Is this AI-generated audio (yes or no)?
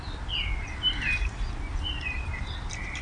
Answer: no